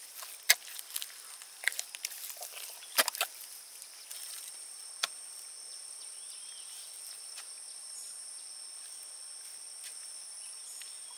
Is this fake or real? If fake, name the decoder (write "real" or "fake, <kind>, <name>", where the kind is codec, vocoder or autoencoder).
real